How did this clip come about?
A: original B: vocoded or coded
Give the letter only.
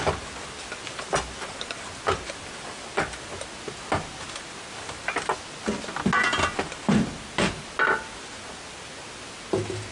A